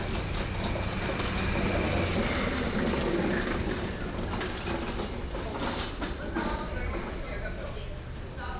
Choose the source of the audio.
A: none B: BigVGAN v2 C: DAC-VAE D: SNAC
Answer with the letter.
A